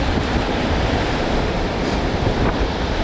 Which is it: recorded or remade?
remade